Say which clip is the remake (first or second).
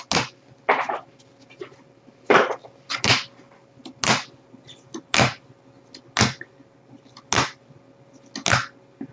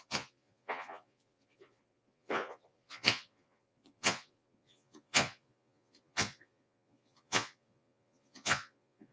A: second